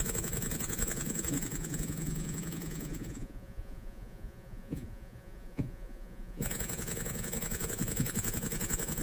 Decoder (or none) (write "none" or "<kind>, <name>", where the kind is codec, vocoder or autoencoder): vocoder, Vocos